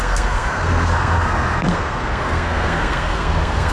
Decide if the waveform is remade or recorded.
remade